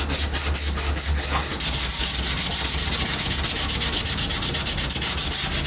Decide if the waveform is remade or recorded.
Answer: recorded